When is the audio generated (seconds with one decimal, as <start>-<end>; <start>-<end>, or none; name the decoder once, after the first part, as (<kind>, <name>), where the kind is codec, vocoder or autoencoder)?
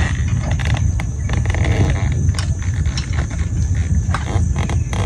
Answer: none